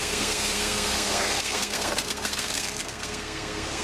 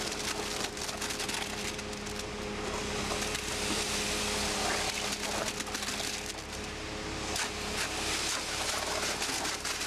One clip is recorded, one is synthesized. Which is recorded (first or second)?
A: second